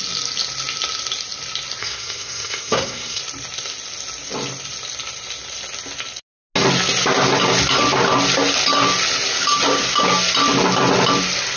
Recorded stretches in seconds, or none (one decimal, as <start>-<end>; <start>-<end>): 0.0-1.8; 3.2-11.6